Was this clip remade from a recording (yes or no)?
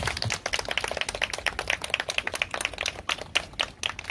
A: no